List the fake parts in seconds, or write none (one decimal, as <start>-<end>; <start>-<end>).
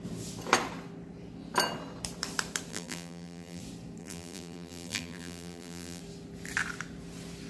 2.7-3.6; 4.0-6.0